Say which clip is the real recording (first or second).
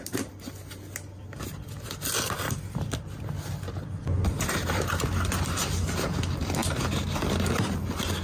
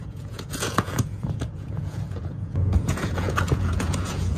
first